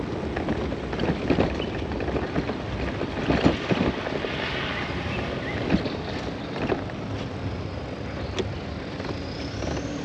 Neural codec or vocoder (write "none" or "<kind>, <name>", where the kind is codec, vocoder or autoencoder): none